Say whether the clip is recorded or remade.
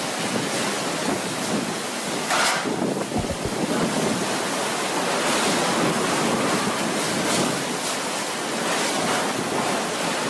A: recorded